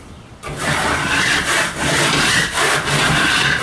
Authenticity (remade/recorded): remade